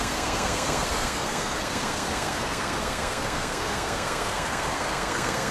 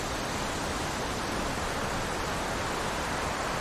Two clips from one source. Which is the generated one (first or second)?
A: first